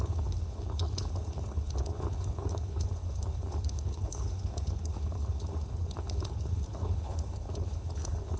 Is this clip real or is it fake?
fake